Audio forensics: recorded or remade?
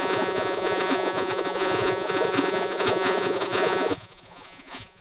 remade